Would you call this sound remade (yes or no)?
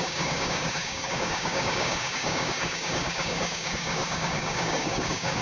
yes